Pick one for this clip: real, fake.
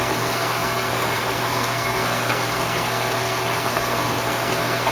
fake